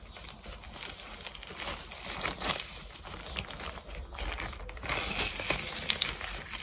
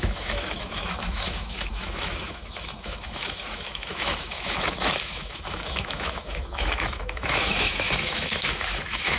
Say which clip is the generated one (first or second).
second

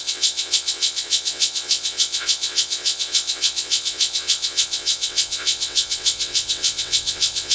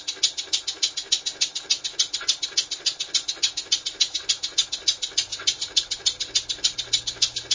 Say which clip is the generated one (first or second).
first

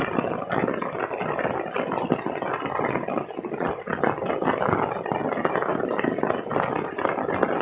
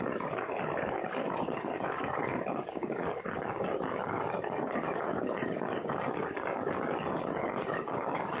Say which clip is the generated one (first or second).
second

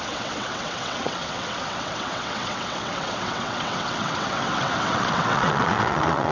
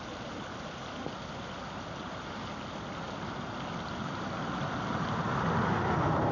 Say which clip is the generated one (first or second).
first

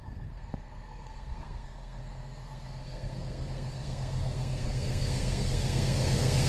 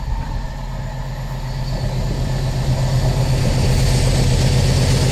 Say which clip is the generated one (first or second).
first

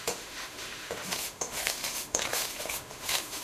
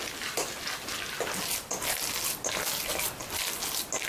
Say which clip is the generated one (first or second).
first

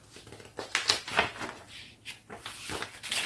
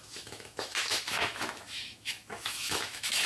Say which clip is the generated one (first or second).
second